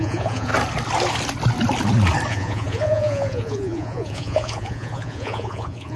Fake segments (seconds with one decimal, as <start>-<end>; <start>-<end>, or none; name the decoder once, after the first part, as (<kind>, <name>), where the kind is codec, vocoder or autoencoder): 0.0-0.5 (vocoder, Vocos); 2.3-6.0